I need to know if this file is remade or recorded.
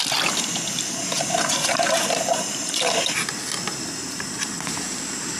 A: recorded